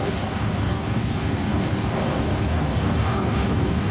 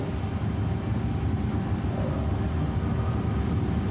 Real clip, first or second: second